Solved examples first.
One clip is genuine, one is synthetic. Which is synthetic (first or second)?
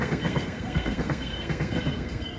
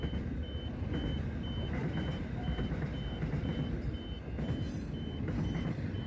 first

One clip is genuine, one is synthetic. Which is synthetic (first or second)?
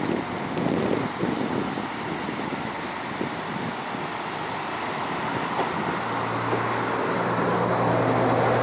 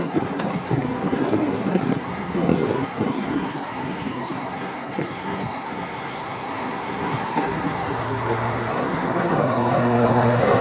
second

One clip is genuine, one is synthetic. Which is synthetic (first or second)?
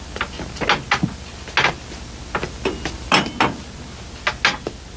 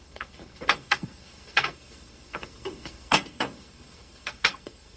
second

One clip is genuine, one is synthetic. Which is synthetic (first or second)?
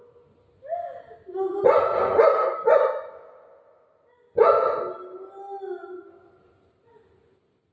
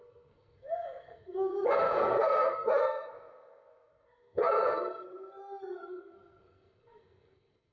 second